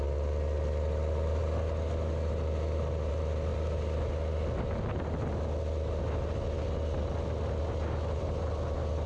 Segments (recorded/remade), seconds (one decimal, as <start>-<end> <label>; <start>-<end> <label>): 0.0-9.1 recorded